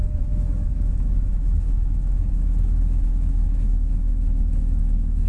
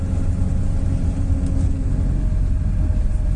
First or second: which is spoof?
first